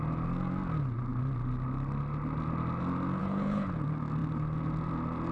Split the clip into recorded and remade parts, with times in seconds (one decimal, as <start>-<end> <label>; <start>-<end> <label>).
0.0-3.2 recorded; 3.2-3.7 remade; 3.7-5.3 recorded